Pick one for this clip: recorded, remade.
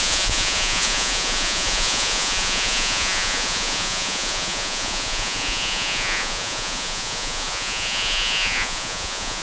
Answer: remade